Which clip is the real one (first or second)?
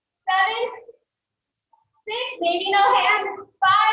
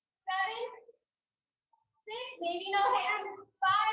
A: first